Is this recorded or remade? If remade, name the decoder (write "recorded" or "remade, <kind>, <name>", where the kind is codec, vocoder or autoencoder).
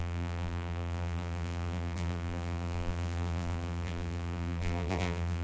remade, vocoder, BigVGAN v2